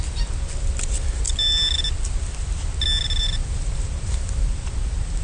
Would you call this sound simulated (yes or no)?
no